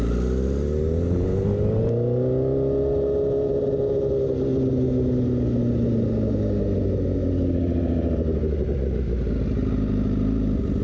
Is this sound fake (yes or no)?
no